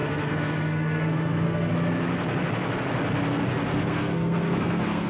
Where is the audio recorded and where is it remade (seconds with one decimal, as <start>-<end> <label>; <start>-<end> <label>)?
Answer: 0.0-1.7 remade; 1.7-3.7 recorded; 3.7-5.1 remade